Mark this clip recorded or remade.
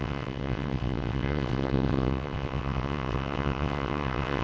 remade